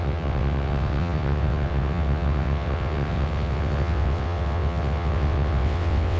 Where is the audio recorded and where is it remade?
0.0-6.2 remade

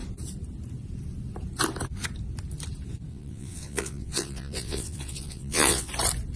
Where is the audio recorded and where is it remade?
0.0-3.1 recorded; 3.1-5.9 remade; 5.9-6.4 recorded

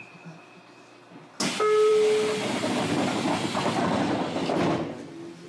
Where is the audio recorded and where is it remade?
0.0-5.5 recorded